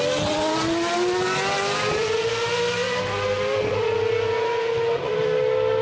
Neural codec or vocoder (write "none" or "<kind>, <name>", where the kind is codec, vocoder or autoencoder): none